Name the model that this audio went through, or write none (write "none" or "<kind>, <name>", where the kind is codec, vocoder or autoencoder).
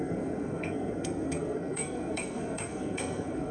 codec, SNAC